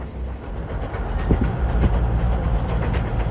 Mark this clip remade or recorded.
recorded